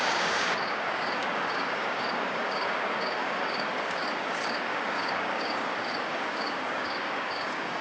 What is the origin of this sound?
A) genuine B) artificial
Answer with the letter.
B